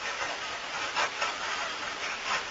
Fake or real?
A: real